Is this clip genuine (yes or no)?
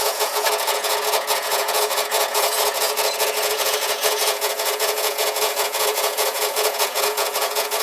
no